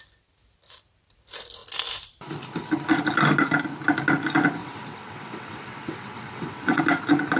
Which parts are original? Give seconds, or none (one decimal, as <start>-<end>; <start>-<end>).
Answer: 0.0-4.6; 6.8-7.4